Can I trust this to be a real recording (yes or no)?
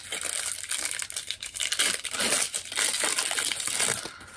yes